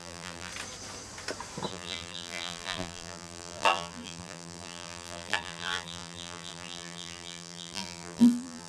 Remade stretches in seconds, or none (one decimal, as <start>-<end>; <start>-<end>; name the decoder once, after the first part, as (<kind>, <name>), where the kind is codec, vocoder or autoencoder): 0.0-0.5 (vocoder, BigVGAN v2); 1.7-8.7